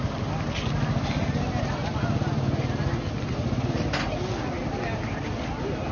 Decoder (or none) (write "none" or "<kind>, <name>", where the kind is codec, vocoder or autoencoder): none